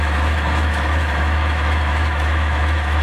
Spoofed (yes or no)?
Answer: yes